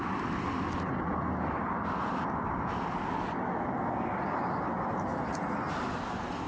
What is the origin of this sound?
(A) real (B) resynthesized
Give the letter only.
A